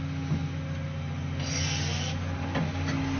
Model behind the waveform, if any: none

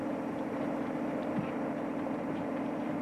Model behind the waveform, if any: vocoder, BigVGAN v2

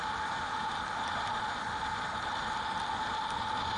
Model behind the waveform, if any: none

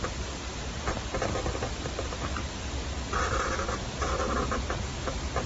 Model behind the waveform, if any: none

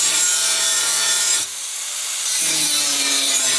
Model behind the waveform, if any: vocoder, BigVGAN v2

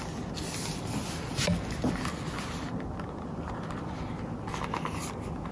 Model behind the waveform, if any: none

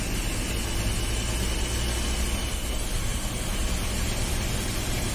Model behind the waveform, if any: none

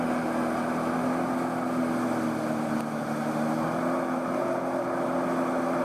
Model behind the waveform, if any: none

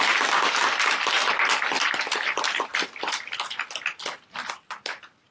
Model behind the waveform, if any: vocoder, BigVGAN v2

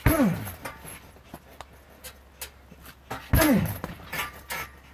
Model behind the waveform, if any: none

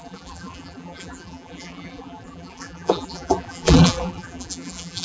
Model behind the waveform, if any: vocoder, BigVGAN v2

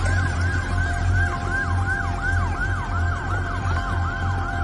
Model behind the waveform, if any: vocoder, BigVGAN v2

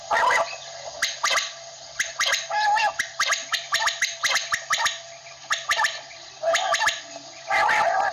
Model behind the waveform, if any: none